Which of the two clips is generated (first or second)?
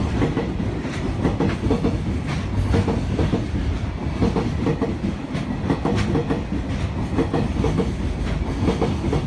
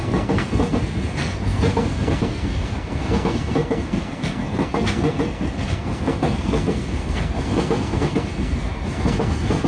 second